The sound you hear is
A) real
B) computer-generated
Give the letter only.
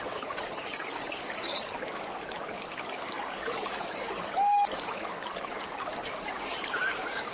B